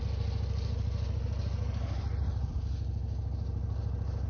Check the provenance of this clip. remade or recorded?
recorded